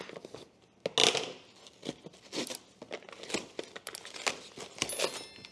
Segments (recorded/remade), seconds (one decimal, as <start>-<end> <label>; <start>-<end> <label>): 0.0-5.5 recorded